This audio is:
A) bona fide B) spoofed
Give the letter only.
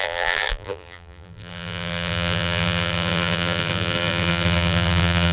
B